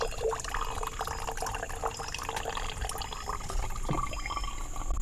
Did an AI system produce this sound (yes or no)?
no